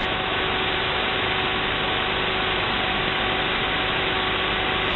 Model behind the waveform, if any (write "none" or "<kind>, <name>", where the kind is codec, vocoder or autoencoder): vocoder, BigVGAN v2